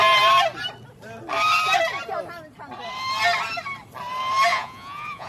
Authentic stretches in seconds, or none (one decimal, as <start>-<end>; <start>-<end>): 0.0-4.5